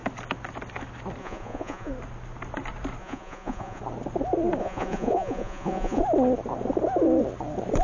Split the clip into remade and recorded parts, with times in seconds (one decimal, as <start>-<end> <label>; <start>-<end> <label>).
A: 0.0-1.2 recorded; 1.2-1.9 remade; 1.9-3.0 recorded; 3.0-3.8 remade; 3.8-4.6 recorded; 4.6-6.0 remade; 6.0-7.8 recorded